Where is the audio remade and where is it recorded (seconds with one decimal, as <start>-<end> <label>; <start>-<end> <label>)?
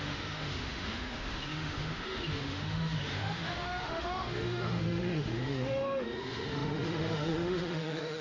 0.0-8.2 remade